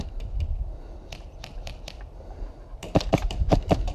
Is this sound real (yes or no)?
no